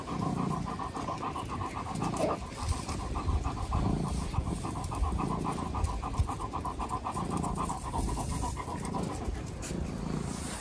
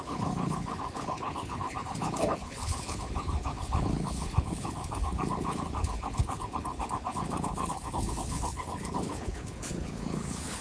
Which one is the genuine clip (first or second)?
first